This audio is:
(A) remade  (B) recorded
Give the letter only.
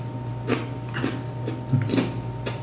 B